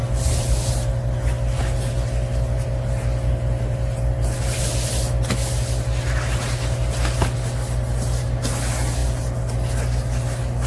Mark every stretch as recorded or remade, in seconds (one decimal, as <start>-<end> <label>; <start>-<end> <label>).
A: 0.0-10.7 recorded